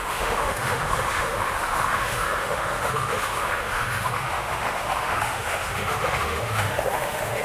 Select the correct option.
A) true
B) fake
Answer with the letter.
B